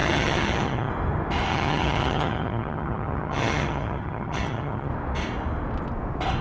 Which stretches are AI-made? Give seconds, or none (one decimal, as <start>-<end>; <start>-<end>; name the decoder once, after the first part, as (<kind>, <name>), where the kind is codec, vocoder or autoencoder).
0.0-0.9 (vocoder, HiFi-GAN); 1.5-4.9